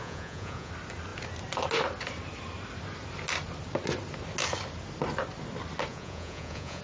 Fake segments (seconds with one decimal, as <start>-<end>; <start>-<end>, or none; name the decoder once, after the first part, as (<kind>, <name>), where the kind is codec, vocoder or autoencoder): 0.0-0.7 (vocoder, Vocos); 5.9-6.8